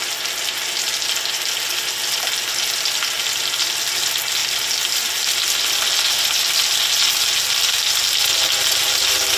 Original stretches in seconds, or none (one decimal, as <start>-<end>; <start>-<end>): 0.0-9.4